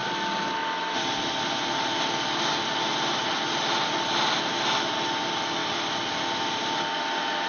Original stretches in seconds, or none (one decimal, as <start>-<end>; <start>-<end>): 0.0-7.5